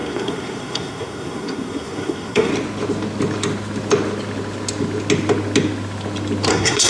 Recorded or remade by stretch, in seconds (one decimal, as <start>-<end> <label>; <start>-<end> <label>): 0.0-2.5 remade; 2.5-6.5 recorded; 6.5-6.9 remade